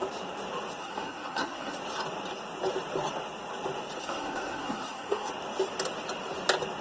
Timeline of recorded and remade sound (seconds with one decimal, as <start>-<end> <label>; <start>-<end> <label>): 0.0-0.8 recorded; 0.8-1.8 remade; 1.8-4.0 recorded; 4.0-5.3 remade; 5.3-6.8 recorded